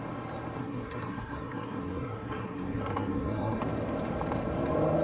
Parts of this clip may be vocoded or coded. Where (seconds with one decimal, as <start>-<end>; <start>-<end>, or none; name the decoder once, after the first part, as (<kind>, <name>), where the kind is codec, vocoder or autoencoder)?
0.6-3.6 (codec, SNAC)